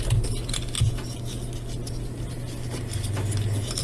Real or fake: real